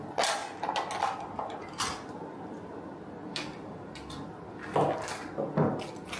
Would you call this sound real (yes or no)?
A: yes